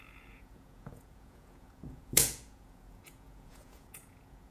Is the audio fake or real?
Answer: fake